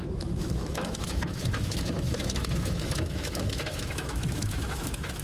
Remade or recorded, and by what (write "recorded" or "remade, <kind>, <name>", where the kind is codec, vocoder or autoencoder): remade, autoencoder, DAC-VAE